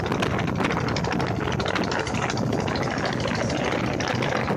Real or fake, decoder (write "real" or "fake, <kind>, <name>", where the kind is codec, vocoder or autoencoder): real